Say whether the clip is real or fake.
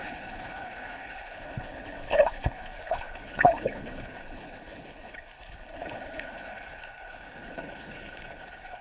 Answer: fake